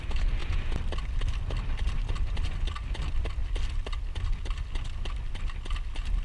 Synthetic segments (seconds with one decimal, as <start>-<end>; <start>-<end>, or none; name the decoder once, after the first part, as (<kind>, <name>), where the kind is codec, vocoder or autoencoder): none